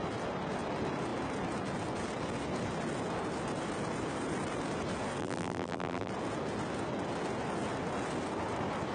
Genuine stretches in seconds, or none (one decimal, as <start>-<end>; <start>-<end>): 0.0-5.2; 6.1-8.9